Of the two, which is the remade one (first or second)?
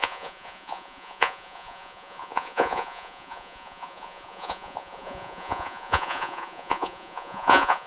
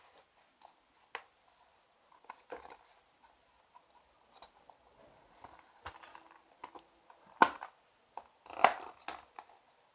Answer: first